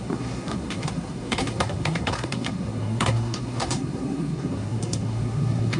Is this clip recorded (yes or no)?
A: no